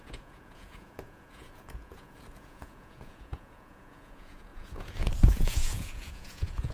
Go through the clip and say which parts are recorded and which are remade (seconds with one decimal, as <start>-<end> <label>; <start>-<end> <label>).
0.0-6.7 remade